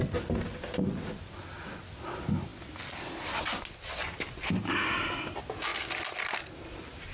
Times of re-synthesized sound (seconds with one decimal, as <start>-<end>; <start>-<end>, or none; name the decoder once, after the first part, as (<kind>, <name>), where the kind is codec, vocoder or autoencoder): 2.5-3.6 (vocoder, BigVGAN v2); 5.7-6.4